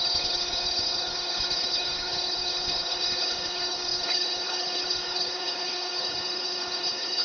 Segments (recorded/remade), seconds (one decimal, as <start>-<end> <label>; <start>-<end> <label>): 0.0-7.2 remade